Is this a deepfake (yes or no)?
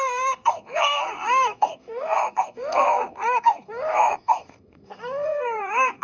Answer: yes